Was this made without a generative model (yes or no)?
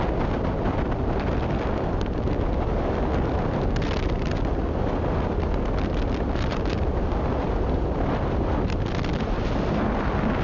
yes